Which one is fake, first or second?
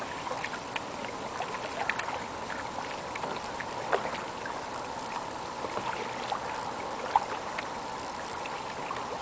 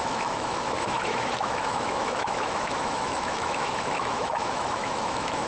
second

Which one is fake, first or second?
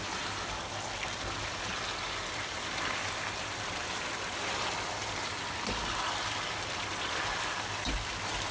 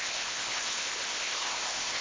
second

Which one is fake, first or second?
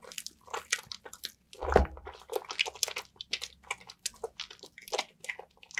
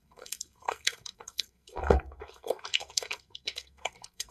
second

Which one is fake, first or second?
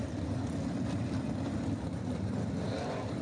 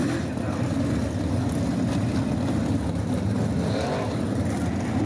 first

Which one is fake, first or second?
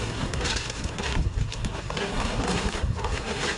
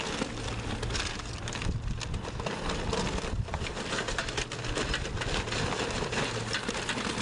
first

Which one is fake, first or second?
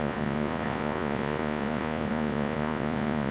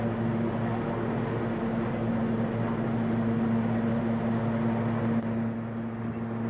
first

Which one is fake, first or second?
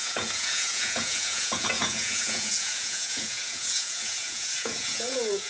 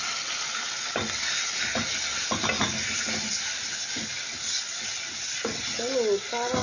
first